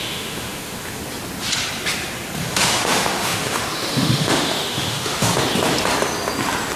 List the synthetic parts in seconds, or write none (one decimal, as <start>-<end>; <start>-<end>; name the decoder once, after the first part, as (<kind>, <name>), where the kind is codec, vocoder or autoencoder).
0.0-1.0 (autoencoder, DAC-VAE); 2.4-5.3